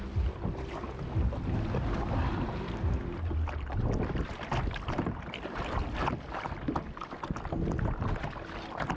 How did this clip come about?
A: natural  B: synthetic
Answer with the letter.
A